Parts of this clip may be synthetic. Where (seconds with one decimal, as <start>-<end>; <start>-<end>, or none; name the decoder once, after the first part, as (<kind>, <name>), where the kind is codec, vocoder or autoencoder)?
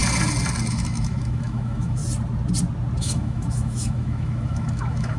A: 0.7-2.0 (autoencoder, DAC-VAE); 3.0-5.2